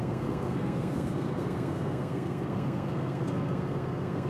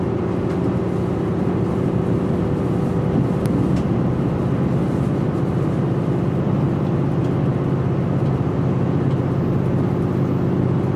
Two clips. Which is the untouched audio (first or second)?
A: second